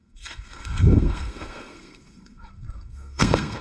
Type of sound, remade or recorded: remade